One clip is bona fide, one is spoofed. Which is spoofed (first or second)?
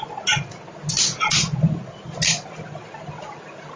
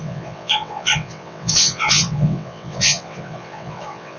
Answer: second